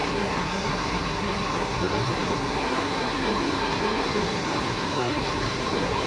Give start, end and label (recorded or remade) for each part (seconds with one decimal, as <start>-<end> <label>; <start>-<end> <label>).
0.0-6.1 remade